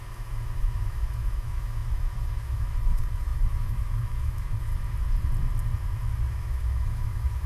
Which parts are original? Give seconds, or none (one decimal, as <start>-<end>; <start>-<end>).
4.7-6.3